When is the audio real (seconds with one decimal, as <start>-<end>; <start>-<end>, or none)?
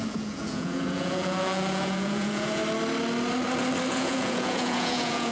2.6-3.9